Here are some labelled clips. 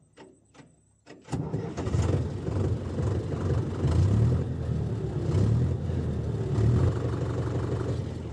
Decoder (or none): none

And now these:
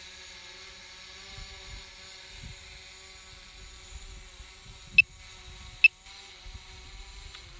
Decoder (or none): none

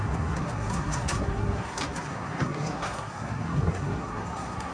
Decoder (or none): codec, SNAC